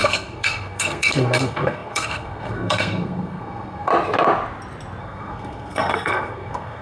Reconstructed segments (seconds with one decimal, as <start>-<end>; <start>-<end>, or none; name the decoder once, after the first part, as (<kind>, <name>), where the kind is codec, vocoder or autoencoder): 0.0-3.9 (codec, SNAC); 5.0-6.8